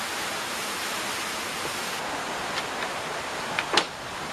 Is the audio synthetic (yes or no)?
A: no